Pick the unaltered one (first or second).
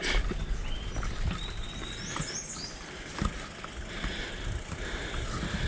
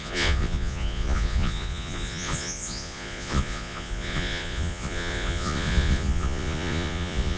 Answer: first